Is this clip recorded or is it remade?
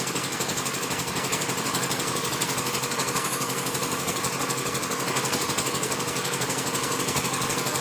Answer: remade